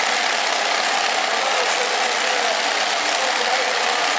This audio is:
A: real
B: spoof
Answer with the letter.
A